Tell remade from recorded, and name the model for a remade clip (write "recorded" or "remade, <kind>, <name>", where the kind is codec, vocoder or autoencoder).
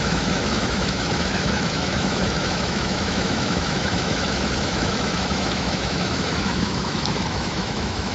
remade, autoencoder, DAC-VAE